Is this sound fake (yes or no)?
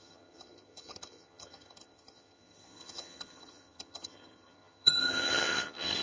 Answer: yes